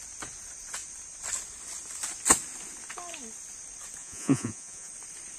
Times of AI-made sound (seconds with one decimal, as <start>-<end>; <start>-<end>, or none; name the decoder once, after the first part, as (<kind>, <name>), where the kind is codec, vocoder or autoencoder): 4.0-4.9 (vocoder, Vocos)